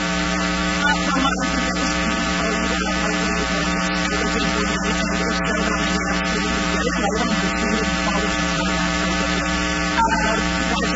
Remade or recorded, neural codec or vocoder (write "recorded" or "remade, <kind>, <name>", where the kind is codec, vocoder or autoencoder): remade, vocoder, BigVGAN v2